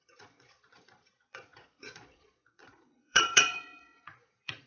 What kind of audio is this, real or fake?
fake